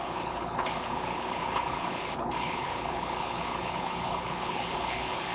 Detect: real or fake fake